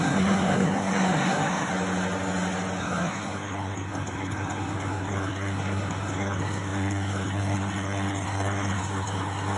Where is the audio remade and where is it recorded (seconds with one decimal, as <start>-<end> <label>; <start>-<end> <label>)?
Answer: 0.0-1.7 remade; 1.7-2.8 recorded; 2.8-9.6 remade